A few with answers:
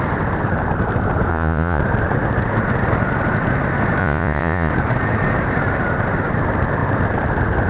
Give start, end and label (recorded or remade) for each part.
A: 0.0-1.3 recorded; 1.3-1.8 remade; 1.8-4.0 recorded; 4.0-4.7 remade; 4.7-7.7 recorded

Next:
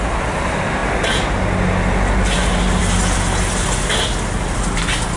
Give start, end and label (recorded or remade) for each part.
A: 0.0-5.2 recorded

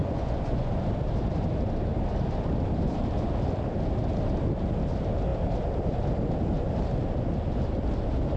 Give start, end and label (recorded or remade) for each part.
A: 0.0-0.7 remade; 0.7-8.4 recorded